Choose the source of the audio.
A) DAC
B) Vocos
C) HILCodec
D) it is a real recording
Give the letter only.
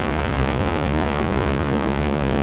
B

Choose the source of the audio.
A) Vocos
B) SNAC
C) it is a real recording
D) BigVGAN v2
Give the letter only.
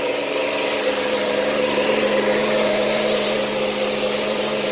D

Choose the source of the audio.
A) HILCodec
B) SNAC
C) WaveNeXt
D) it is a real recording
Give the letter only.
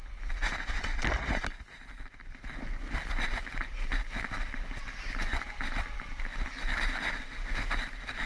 D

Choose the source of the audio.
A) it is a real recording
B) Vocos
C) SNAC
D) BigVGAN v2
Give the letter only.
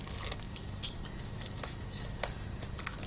A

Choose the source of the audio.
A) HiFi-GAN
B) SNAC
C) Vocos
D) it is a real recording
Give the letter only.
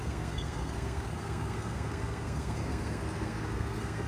B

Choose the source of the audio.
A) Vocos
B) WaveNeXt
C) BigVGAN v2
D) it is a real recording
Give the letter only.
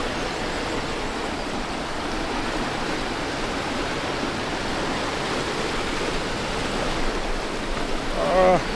D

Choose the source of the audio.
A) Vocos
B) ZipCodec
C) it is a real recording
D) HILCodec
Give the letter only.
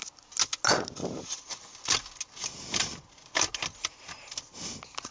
C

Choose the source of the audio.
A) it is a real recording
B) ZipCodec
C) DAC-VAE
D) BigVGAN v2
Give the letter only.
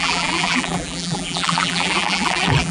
D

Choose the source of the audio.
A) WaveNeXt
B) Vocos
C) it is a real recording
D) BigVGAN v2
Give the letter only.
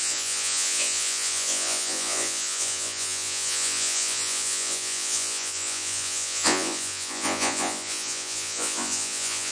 B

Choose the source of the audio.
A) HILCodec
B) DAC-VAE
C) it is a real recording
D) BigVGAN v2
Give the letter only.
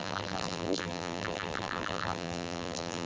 D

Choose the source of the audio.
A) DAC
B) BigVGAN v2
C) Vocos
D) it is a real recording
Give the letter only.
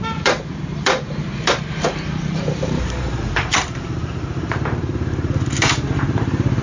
B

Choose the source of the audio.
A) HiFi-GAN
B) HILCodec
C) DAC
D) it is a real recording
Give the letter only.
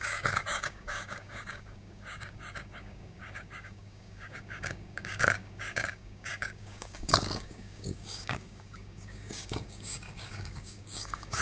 C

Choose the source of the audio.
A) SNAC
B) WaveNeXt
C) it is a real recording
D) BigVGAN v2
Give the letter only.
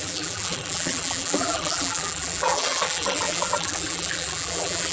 D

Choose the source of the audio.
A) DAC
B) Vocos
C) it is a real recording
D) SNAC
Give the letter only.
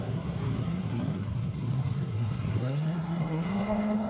D